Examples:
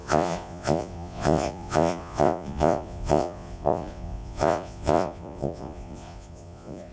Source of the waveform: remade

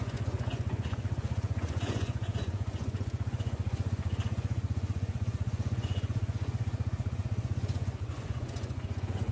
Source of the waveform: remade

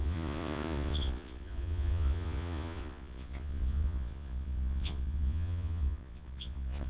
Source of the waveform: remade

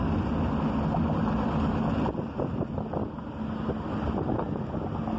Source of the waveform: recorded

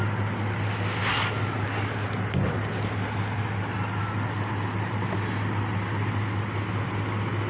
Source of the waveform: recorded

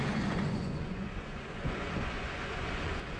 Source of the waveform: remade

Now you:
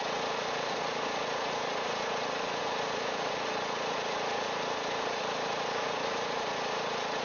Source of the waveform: remade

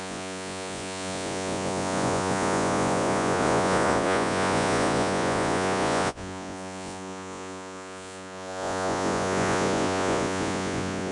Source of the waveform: remade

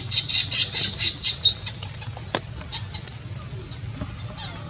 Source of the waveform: recorded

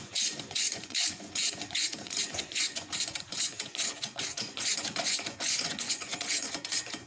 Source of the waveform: remade